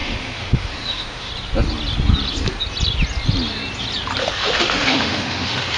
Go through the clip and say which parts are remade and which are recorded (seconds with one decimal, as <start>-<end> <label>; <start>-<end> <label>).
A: 0.0-1.3 remade; 1.3-4.2 recorded; 4.2-5.8 remade